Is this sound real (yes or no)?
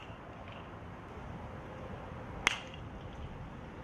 yes